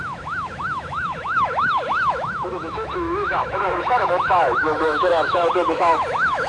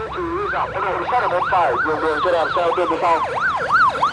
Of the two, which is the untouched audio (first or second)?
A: second